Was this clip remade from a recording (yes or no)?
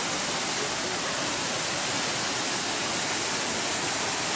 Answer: no